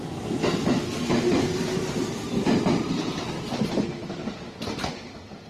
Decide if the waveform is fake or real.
real